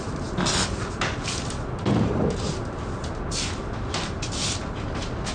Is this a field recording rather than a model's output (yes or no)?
yes